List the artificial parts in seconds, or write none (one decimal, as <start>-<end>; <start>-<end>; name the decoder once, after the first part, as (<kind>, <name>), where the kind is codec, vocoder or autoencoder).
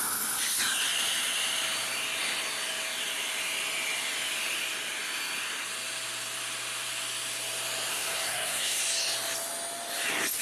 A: 7.9-8.8 (codec, SNAC)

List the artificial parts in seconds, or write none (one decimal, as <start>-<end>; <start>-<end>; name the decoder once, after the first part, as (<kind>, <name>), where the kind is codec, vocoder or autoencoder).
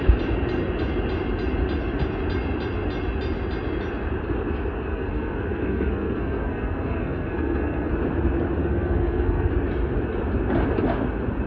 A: 4.9-7.9 (codec, SNAC); 8.6-9.5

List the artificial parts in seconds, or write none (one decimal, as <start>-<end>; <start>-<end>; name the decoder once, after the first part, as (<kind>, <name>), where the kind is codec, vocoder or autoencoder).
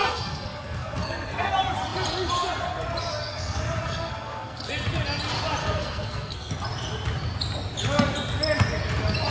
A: 0.0-1.5 (codec, SNAC); 3.3-4.7; 5.6-6.5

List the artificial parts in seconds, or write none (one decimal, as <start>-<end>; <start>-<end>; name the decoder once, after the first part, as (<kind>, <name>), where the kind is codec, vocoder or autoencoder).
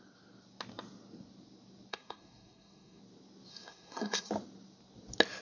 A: 1.9-3.0 (codec, SNAC); 3.5-4.3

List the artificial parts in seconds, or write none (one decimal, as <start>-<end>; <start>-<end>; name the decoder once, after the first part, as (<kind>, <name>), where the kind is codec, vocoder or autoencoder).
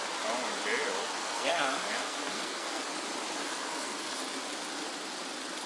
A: 1.2-2.9 (codec, SNAC); 3.4-4.2